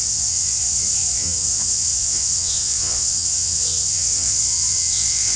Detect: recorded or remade remade